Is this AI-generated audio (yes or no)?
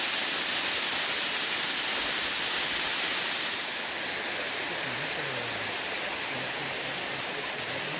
no